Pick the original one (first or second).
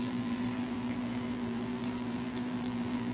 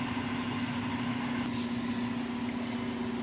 second